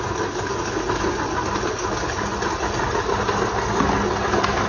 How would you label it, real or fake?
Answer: real